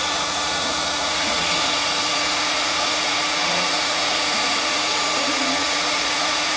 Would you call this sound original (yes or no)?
no